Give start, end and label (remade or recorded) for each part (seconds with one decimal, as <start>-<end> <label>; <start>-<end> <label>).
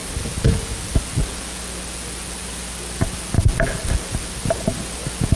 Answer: 0.0-5.4 recorded